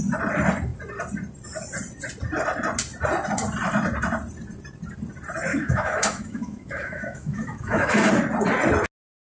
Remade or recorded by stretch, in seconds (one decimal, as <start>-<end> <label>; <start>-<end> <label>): 0.0-5.5 recorded; 5.5-8.1 remade; 8.1-9.3 recorded